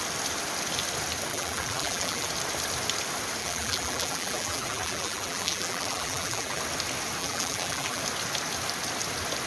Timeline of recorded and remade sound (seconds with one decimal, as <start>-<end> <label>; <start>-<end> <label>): 0.0-1.3 recorded; 1.3-2.3 remade; 2.3-3.4 recorded; 3.4-6.6 remade; 6.6-7.2 recorded; 7.2-8.0 remade; 8.0-9.5 recorded